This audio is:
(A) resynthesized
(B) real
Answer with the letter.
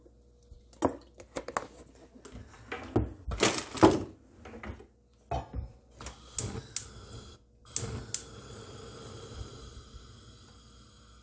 B